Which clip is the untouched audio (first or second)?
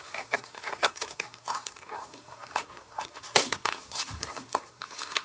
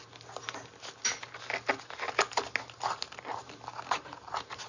second